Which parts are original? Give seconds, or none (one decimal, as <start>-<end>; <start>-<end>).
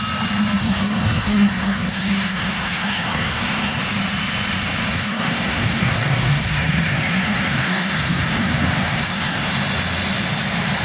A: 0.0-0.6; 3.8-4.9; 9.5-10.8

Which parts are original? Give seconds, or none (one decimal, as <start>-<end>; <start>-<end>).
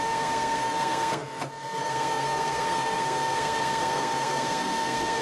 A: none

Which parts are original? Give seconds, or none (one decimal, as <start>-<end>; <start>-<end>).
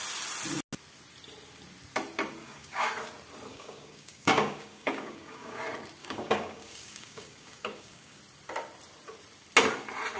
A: 0.0-2.4; 2.9-3.5; 5.6-6.0; 8.2-10.2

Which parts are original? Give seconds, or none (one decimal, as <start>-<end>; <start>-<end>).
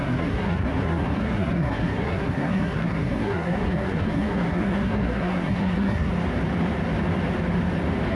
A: 6.1-8.1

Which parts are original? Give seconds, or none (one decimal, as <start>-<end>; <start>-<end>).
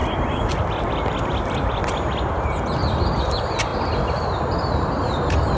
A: 0.0-5.6